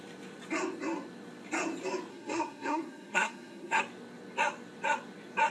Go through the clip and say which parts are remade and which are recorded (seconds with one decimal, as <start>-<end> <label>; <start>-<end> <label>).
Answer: 0.0-2.1 recorded; 2.1-3.8 remade; 3.8-5.5 recorded